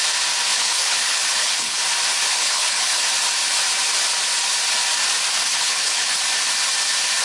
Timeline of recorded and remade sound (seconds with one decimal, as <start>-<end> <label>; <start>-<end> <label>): 0.0-0.5 recorded; 0.5-1.8 remade; 1.8-2.3 recorded; 2.3-3.0 remade; 3.0-5.5 recorded; 5.5-6.2 remade; 6.2-7.2 recorded

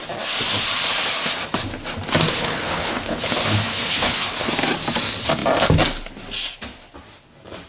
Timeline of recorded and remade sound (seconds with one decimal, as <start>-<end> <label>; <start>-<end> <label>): 0.0-2.3 recorded; 2.3-4.5 remade; 4.5-7.7 recorded

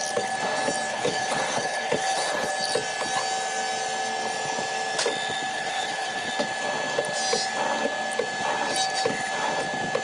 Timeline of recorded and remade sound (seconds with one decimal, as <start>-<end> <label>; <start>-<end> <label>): 0.0-0.9 recorded; 0.9-2.5 remade; 2.5-5.5 recorded; 5.5-6.3 remade; 6.3-10.0 recorded

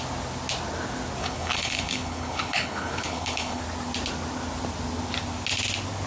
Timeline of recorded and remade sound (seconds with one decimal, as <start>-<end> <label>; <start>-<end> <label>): 0.0-1.2 recorded; 1.2-3.6 remade; 3.6-6.1 recorded

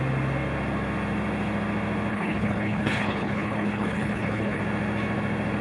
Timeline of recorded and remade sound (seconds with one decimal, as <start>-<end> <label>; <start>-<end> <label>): 0.0-2.1 recorded; 2.1-4.6 remade; 4.6-5.6 recorded

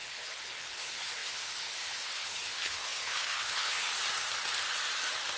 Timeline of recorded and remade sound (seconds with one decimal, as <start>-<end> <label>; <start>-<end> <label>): 0.0-3.9 remade; 3.9-5.4 recorded